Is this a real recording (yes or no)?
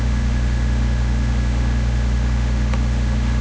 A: no